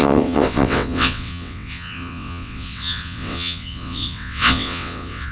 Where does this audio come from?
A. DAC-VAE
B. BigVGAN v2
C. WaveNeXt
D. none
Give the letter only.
C